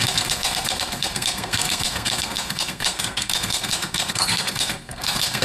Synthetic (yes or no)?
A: yes